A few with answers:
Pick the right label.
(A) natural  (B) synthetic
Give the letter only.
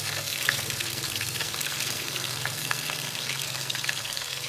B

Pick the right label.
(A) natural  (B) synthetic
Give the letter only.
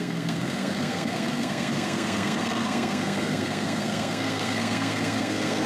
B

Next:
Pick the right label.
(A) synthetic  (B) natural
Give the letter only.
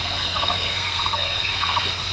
A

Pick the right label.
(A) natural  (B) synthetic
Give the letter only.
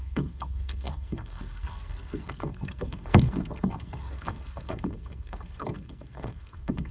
B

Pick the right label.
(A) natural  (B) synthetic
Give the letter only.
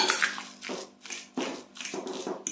A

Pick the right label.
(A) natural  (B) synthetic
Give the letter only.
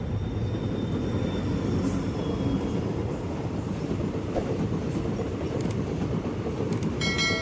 A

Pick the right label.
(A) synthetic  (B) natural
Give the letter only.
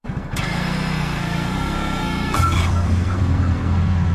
A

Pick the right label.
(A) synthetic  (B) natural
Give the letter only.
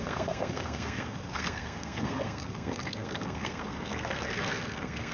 A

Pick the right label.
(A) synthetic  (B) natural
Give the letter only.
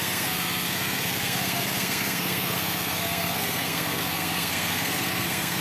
A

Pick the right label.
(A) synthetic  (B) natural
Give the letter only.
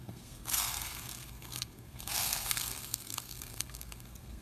A